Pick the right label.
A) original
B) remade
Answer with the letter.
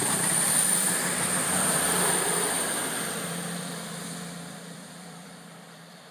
B